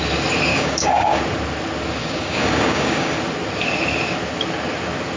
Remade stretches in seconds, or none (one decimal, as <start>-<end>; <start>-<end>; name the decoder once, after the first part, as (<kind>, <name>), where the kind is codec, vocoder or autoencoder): 0.5-1.2 (codec, DAC); 2.0-3.2